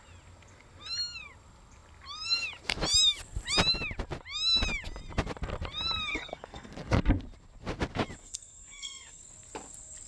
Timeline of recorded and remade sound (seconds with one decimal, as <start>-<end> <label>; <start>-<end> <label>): 0.0-6.1 recorded; 6.1-6.7 remade; 6.7-8.2 recorded; 8.2-9.2 remade; 9.2-10.1 recorded